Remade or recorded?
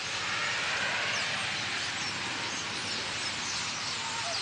recorded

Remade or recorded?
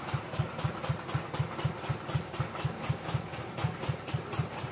recorded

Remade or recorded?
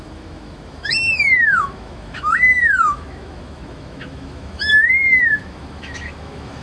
remade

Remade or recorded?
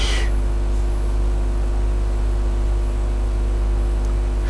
recorded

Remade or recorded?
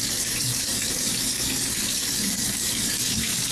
remade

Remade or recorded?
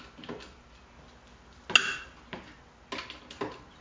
recorded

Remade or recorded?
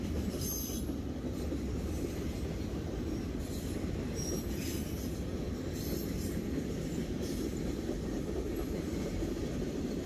recorded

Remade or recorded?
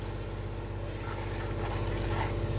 recorded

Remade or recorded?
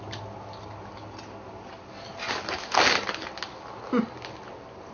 recorded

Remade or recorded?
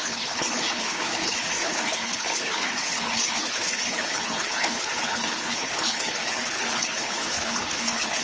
remade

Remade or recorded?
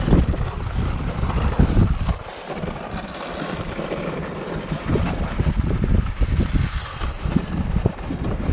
remade